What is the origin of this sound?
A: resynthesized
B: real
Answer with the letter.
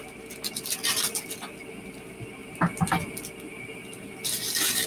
B